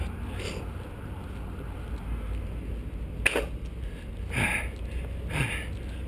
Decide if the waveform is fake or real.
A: real